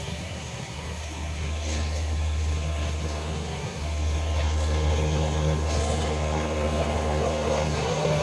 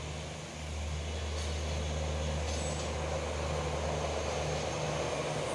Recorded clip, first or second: second